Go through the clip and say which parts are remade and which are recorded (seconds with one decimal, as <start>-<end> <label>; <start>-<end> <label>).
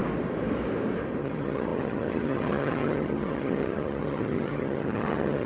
0.0-1.2 recorded; 1.2-5.5 remade